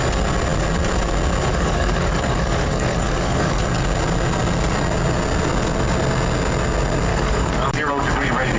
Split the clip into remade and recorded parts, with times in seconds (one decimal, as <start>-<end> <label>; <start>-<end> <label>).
0.0-1.5 recorded; 1.5-3.6 remade; 3.6-7.1 recorded; 7.1-7.9 remade; 7.9-8.6 recorded